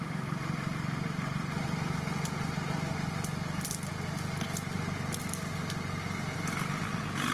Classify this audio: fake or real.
real